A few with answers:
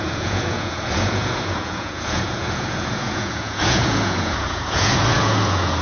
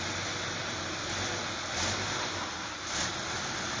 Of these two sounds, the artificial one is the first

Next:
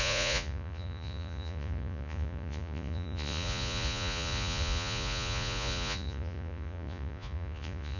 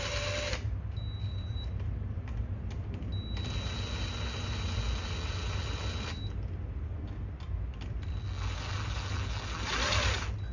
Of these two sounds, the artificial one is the first